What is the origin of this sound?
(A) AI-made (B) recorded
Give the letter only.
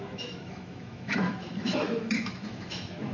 A